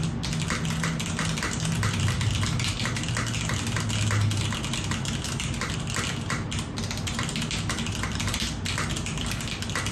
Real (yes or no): yes